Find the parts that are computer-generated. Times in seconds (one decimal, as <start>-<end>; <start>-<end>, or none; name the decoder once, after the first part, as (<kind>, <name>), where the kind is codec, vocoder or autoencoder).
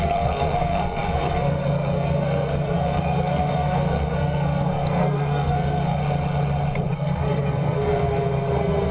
0.0-6.0 (codec, SNAC); 6.9-8.9